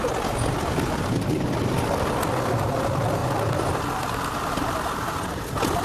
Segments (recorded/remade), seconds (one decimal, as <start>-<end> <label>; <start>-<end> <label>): 0.0-5.8 recorded